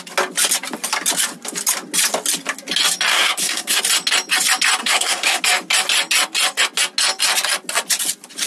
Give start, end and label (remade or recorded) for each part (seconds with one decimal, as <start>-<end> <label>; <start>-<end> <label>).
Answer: 0.0-3.1 recorded; 3.1-3.8 remade; 3.8-4.8 recorded; 4.8-5.4 remade; 5.4-8.5 recorded